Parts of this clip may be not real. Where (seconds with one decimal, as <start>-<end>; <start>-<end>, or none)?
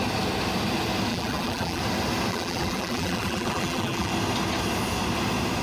1.1-1.8; 2.3-4.1